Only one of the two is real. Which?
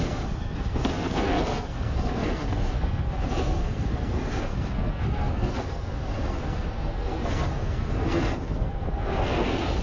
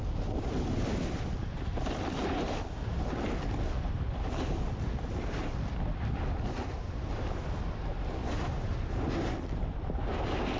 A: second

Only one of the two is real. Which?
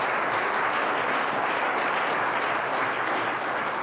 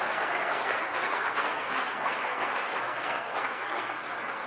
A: first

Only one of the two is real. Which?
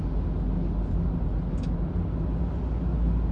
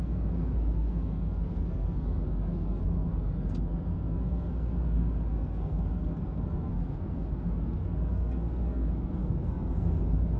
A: first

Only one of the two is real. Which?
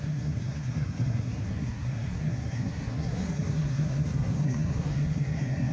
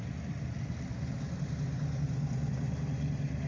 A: second